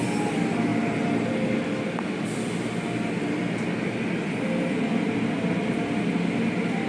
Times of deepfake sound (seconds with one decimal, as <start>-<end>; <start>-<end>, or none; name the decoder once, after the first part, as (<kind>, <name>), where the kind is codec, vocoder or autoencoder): 0.7-1.3 (vocoder, BigVGAN v2)